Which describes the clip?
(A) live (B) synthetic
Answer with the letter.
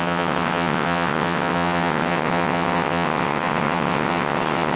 B